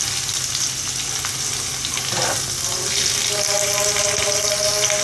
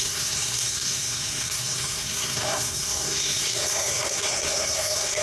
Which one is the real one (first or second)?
first